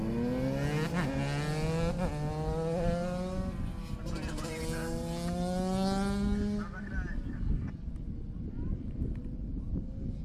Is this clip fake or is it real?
real